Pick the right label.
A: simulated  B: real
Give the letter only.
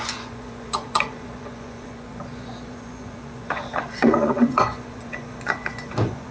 A